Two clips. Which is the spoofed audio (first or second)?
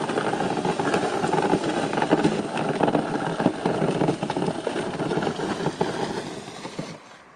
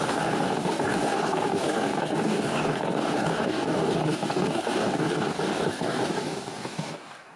second